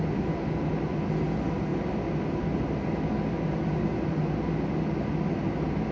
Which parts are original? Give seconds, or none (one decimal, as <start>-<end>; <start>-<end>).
0.0-5.9